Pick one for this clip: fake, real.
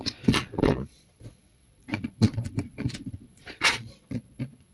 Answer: fake